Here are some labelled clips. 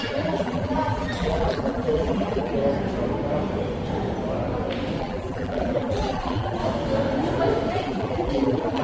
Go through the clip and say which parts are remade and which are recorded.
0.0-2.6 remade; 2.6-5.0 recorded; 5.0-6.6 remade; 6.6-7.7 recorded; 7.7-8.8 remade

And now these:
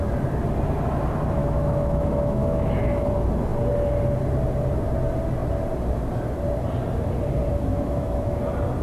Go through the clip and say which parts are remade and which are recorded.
0.0-1.4 recorded; 1.4-3.1 remade; 3.1-7.7 recorded; 7.7-8.4 remade; 8.4-8.8 recorded

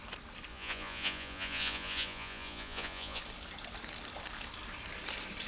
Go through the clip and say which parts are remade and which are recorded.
0.0-0.5 recorded; 0.5-3.2 remade; 3.2-5.5 recorded

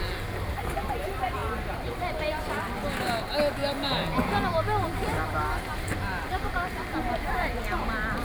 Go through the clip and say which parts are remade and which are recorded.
0.0-3.6 recorded; 3.6-4.3 remade; 4.3-5.7 recorded; 5.7-7.0 remade; 7.0-8.2 recorded

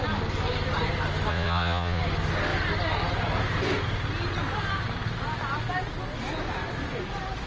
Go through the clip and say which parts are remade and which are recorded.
0.0-1.3 recorded; 1.3-2.0 remade; 2.0-7.5 recorded

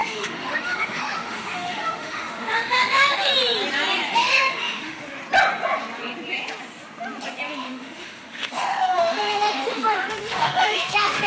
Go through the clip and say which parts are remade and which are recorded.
0.0-3.3 remade; 3.3-4.1 recorded; 4.1-5.2 remade; 5.2-7.5 recorded; 7.5-11.3 remade

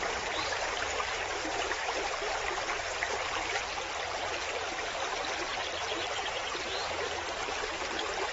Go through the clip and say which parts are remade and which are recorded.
0.0-8.3 remade

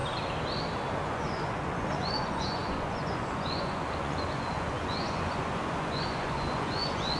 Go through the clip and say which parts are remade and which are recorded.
0.0-0.9 recorded; 0.9-7.2 remade